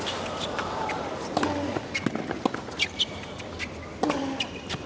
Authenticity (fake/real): real